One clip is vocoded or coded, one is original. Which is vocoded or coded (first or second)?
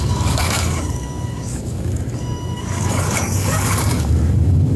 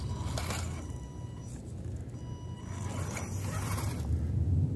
first